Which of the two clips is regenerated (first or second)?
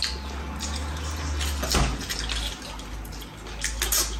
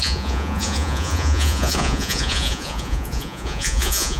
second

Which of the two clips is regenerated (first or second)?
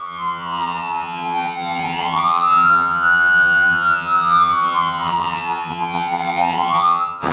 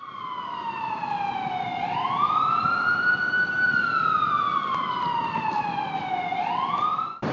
first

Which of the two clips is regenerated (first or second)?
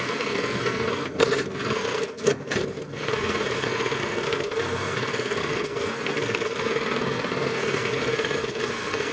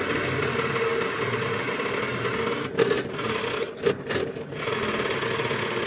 first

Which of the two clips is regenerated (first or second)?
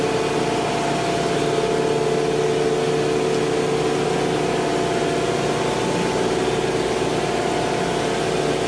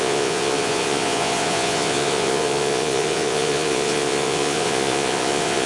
second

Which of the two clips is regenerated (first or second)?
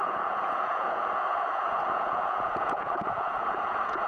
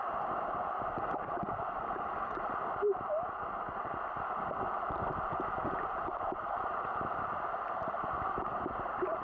first